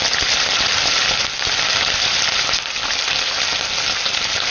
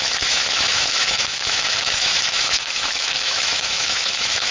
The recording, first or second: first